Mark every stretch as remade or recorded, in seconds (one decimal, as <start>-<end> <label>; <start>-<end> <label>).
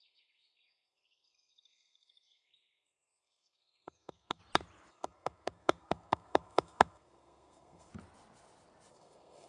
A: 0.0-4.4 remade; 4.4-4.9 recorded; 4.9-7.9 remade; 7.9-8.9 recorded; 8.9-9.5 remade